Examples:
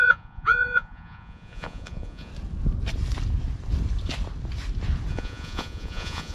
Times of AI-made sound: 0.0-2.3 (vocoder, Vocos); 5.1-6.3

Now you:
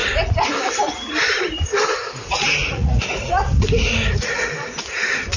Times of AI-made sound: 2.2-3.0 (vocoder, Vocos)

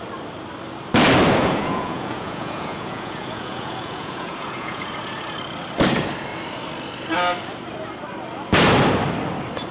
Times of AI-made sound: 1.4-4.9 (vocoder, Vocos)

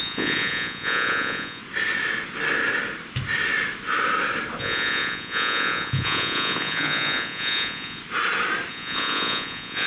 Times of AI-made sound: 0.0-1.6 (vocoder, Vocos); 4.6-8.0; 8.7-9.9